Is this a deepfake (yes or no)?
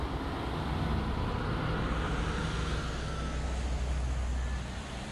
no